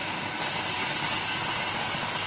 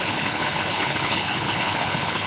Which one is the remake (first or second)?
second